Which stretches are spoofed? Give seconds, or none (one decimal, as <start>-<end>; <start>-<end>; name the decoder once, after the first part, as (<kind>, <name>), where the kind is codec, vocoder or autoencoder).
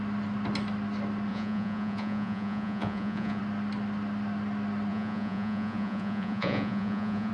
1.3-3.4 (vocoder, Vocos); 4.9-7.3